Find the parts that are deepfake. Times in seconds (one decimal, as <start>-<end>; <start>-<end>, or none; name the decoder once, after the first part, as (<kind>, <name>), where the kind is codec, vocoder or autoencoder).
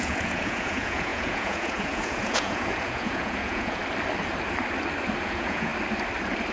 0.0-3.8 (vocoder, Vocos); 5.2-5.7